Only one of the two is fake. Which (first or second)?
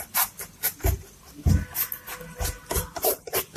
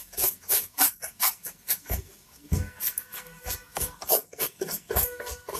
second